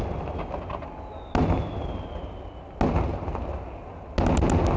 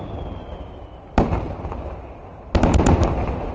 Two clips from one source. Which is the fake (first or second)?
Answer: second